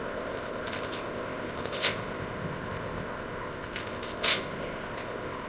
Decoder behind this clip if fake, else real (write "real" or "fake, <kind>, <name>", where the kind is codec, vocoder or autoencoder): fake, codec, ZipCodec